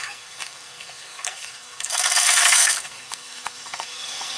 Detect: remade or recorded remade